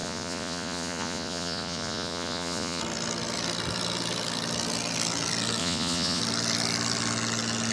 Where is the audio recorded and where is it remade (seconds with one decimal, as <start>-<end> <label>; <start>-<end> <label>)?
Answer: 0.0-2.8 remade; 2.8-5.6 recorded; 5.6-6.2 remade; 6.2-7.7 recorded

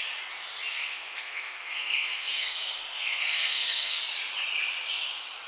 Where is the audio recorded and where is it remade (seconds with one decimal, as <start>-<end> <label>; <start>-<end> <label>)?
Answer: 0.0-0.7 recorded; 0.7-4.0 remade; 4.0-5.5 recorded

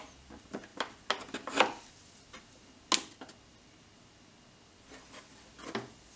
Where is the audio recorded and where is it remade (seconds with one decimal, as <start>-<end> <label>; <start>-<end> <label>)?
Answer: 0.0-6.2 recorded